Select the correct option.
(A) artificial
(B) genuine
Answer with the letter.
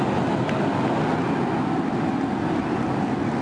B